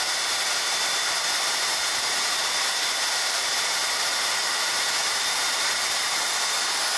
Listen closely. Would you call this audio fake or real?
fake